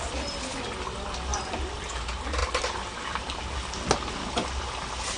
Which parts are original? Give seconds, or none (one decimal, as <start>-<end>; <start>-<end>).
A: 0.0-5.2